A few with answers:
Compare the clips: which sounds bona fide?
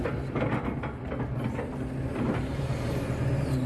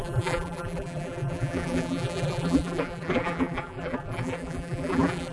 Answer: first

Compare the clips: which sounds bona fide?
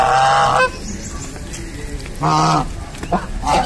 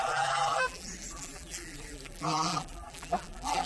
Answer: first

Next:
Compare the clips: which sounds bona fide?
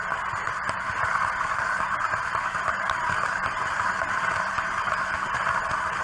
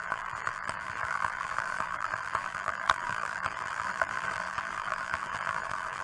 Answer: first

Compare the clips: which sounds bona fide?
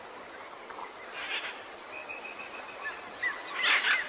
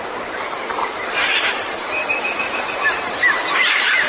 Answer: first